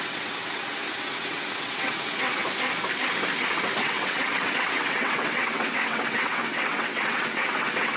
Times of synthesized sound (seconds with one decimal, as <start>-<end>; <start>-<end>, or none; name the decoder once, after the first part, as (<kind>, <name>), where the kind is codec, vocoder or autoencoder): 0.0-2.4 (vocoder, WaveNeXt); 3.8-8.0